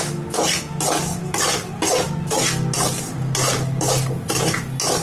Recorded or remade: recorded